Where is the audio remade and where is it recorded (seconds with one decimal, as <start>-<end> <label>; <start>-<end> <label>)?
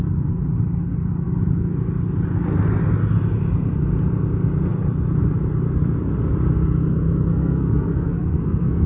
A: 0.0-7.3 recorded; 7.3-8.9 remade